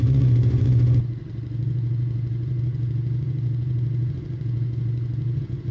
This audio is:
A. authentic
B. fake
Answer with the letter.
B